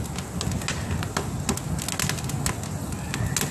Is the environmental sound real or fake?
real